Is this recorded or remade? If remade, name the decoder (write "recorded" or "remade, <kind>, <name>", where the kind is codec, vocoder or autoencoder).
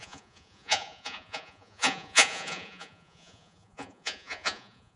remade, vocoder, Vocos